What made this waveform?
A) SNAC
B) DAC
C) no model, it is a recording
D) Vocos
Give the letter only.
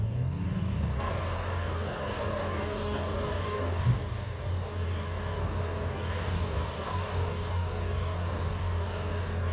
B